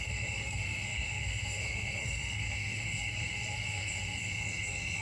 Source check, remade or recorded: remade